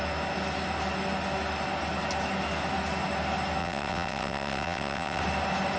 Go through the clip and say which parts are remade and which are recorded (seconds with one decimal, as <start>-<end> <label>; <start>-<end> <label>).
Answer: 0.0-3.6 recorded; 3.6-5.2 remade; 5.2-5.8 recorded